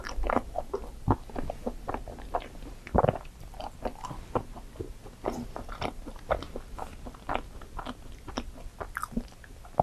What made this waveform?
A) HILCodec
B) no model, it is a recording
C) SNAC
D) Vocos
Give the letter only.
B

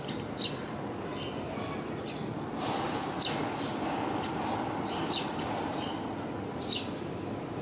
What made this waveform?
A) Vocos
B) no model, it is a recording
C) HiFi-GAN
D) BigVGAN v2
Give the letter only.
B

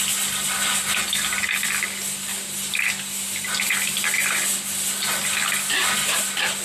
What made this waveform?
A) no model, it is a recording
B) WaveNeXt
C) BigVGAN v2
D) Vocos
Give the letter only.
A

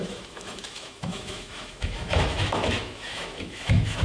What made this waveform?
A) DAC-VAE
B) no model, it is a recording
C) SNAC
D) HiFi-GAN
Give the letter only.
A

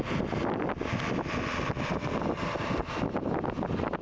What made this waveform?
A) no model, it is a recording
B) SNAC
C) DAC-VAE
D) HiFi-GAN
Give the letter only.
A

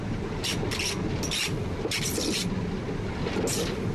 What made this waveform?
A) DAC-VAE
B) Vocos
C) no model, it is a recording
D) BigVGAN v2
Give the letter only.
C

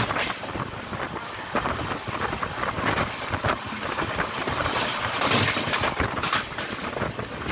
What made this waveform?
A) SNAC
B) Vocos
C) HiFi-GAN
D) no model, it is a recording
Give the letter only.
D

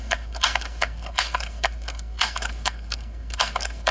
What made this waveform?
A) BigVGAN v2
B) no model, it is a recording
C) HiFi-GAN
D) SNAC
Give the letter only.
D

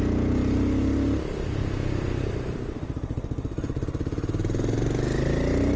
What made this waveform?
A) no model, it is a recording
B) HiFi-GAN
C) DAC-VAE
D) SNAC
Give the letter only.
A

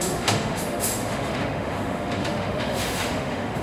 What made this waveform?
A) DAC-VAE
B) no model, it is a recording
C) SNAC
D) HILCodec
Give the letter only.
A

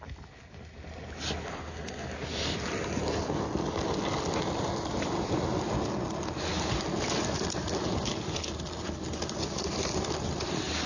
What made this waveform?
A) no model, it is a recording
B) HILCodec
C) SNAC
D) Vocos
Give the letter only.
A